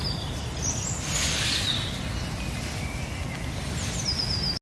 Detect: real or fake real